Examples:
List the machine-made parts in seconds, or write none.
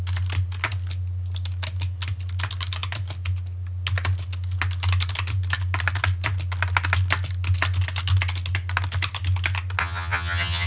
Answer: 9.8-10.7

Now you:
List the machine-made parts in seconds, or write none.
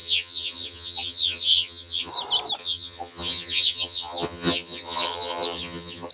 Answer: 0.0-2.1; 2.6-6.1